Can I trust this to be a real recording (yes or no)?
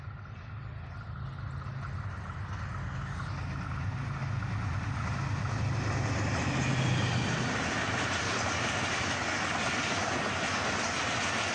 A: yes